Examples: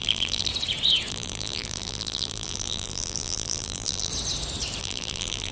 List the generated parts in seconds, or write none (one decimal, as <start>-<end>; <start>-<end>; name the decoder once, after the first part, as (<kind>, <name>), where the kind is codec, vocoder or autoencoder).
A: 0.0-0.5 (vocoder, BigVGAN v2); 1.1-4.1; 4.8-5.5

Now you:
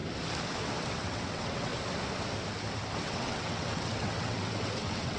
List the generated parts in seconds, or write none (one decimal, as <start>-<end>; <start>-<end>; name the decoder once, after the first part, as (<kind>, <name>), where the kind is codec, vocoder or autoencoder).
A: 0.8-1.7 (vocoder, WaveNeXt); 3.0-5.2

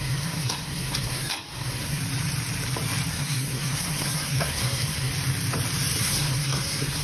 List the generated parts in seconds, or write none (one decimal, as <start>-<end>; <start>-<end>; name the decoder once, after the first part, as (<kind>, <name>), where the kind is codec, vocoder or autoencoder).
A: 0.0-2.0 (codec, SNAC); 3.1-5.1; 6.0-7.0

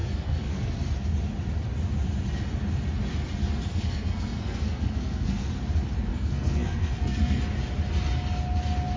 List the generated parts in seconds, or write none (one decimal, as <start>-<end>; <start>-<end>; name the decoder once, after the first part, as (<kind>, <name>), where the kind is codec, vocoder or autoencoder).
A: 0.0-0.7 (codec, SNAC); 3.7-5.5; 6.1-7.4

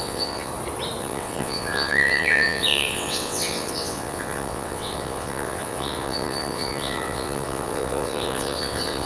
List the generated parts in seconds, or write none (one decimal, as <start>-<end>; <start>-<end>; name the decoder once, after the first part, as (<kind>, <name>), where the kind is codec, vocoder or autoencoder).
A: 0.0-0.5 (vocoder, WaveNeXt); 1.0-9.1

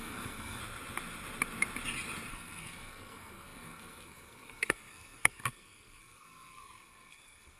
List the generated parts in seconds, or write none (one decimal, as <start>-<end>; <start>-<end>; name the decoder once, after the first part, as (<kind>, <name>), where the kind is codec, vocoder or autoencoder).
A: 0.0-0.6 (codec, SNAC); 2.3-7.6

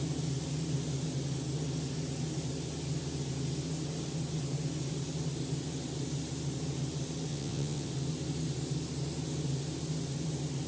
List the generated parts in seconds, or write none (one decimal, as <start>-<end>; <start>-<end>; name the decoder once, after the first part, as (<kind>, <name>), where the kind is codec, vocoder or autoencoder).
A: 7.3-7.9 (vocoder, WaveNeXt)